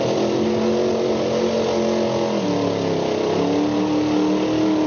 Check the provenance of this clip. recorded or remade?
recorded